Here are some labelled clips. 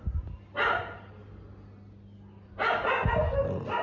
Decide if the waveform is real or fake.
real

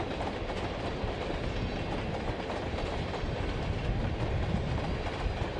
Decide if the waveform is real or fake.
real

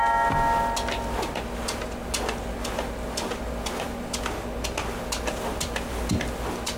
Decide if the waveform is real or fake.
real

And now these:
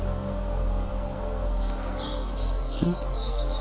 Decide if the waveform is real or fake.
fake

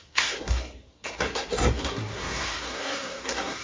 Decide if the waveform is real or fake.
fake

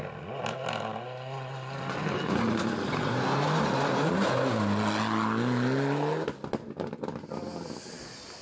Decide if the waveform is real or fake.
real